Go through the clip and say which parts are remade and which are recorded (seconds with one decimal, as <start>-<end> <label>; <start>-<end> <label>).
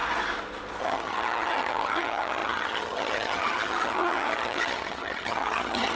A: 0.0-0.8 recorded; 0.8-6.0 remade